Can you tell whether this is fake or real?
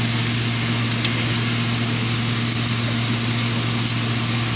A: real